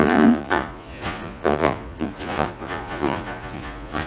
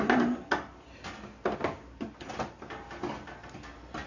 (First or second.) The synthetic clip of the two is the first